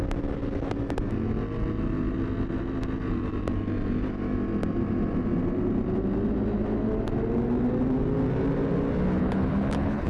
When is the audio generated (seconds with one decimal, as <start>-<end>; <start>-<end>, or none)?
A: 9.2-10.1